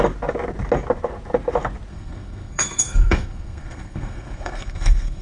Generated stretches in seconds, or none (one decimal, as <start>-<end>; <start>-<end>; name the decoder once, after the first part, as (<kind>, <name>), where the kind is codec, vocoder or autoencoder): 1.9-5.2 (codec, SNAC)